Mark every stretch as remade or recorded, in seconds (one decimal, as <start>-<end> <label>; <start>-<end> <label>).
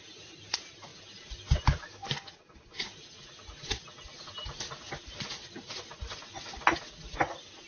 0.0-7.7 recorded